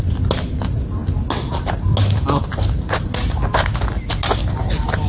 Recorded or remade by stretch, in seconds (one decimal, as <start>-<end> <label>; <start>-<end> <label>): 0.0-5.1 recorded